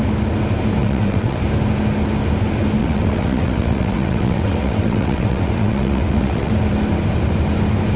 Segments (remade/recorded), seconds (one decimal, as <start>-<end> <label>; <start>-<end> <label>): 0.0-0.8 recorded; 0.8-1.4 remade; 1.4-2.8 recorded; 2.8-6.5 remade; 6.5-8.0 recorded